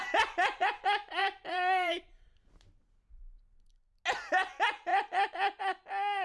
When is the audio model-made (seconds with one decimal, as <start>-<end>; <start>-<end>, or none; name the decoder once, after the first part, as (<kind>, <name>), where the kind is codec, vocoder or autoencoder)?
1.2-2.9 (vocoder, BigVGAN v2)